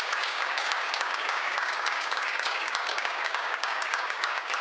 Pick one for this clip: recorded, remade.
remade